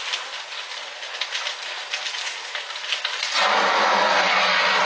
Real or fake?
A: real